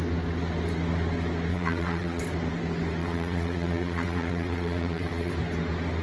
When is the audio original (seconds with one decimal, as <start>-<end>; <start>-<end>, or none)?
0.0-1.5; 2.2-3.0; 5.3-6.0